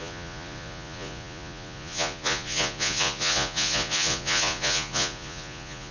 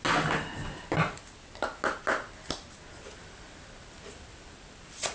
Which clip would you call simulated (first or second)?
first